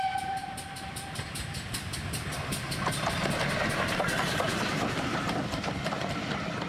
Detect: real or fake real